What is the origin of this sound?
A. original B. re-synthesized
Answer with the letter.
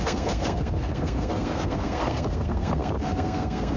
B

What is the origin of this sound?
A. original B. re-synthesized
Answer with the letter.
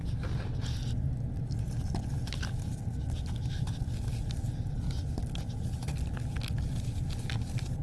A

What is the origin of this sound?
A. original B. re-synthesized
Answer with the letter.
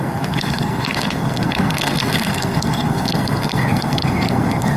B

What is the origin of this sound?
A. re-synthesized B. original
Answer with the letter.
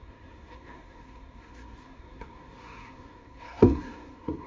A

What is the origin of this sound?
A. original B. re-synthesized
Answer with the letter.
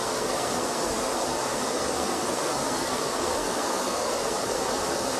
B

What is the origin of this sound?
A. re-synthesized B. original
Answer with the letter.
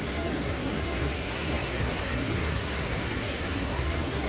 A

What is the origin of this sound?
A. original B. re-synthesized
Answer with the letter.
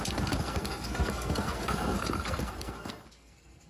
B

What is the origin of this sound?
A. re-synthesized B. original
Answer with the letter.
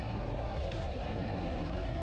A